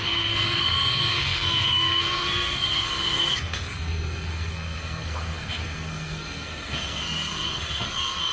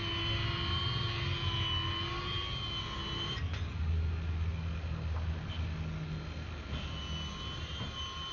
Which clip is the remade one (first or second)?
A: first